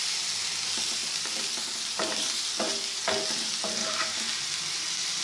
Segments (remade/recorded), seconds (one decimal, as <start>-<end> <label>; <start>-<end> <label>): 0.0-1.0 recorded; 1.0-3.0 remade; 3.0-3.8 recorded; 3.8-4.6 remade; 4.6-5.2 recorded